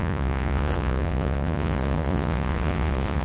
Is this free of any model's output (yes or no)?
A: no